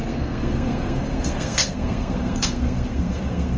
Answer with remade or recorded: remade